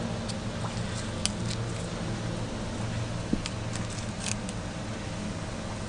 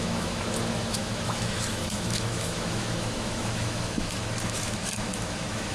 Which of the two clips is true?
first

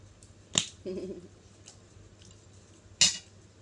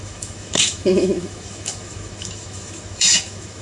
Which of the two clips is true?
first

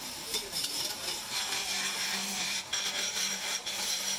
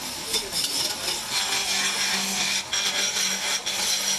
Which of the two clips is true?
second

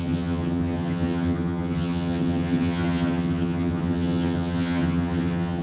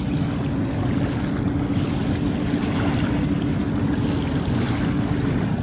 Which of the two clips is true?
second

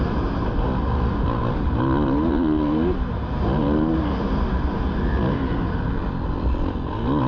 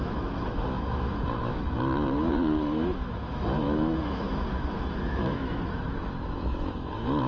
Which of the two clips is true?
first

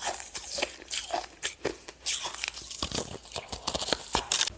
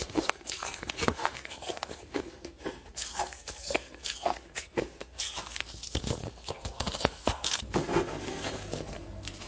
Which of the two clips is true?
first